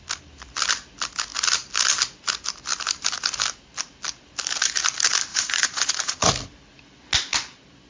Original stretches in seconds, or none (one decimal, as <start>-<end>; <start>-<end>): 0.0-5.3; 6.3-7.9